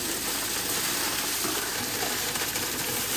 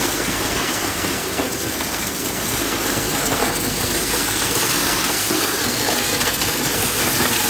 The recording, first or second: first